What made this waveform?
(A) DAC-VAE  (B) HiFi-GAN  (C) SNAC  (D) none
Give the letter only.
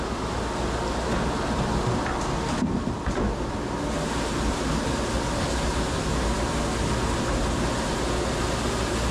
D